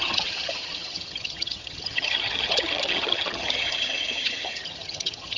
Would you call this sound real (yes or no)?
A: no